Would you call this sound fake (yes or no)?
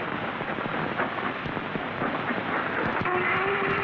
no